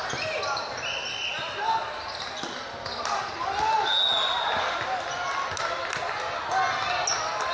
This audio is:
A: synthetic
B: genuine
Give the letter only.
B